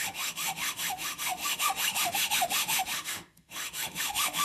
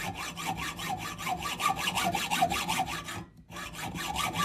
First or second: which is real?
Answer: second